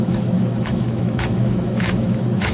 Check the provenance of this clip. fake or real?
fake